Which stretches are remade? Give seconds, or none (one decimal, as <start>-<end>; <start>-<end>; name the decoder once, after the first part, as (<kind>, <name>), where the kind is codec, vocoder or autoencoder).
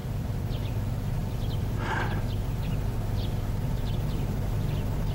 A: 0.0-0.7 (vocoder, BigVGAN v2); 1.2-2.7